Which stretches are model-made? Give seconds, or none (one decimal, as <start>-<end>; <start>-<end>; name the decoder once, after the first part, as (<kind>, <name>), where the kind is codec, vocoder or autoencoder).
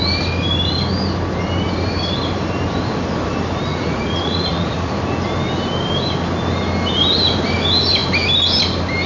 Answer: 3.7-4.9 (vocoder, Vocos)